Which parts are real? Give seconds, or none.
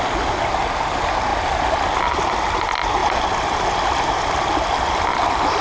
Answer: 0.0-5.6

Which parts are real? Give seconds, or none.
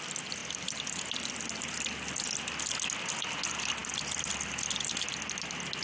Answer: 0.0-5.8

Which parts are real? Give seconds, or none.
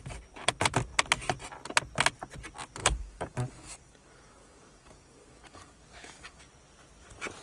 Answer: 0.0-2.8; 6.4-7.4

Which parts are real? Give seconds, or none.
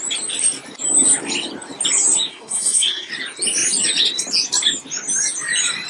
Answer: 0.0-2.3; 3.1-5.9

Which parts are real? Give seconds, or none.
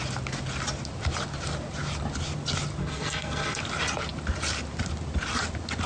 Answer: 0.0-2.8; 3.6-5.9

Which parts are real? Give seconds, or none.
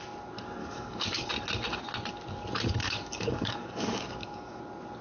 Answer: 0.0-0.6; 1.3-2.8; 4.6-5.0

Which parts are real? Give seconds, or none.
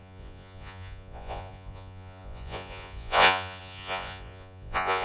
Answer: none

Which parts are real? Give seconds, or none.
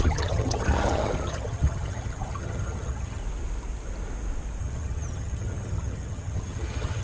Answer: 3.2-4.6